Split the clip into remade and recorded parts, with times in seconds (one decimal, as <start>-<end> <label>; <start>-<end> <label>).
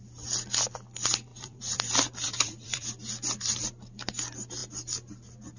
0.0-1.3 recorded; 1.3-2.9 remade; 2.9-5.6 recorded